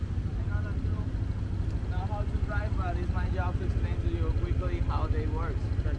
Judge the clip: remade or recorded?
recorded